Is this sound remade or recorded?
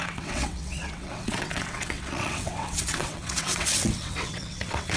remade